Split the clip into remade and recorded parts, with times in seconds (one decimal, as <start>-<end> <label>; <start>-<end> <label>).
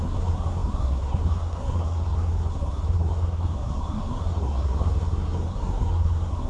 0.0-6.5 remade